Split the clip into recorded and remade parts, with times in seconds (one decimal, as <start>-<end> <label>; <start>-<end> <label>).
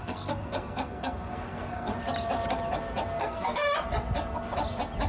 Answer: 0.0-1.9 remade; 1.9-3.2 recorded; 3.2-3.6 remade; 3.6-5.1 recorded